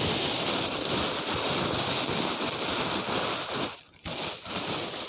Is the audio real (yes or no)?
yes